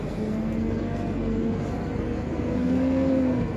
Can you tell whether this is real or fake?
fake